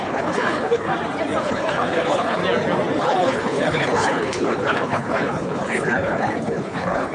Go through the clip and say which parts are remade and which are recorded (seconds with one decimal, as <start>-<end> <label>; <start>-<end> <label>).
0.0-0.9 remade; 0.9-1.4 recorded; 1.4-2.4 remade; 2.4-3.0 recorded; 3.0-7.1 remade